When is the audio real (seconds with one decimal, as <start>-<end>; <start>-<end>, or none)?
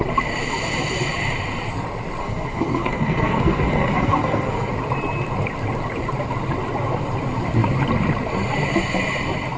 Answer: 0.0-2.2; 4.7-9.6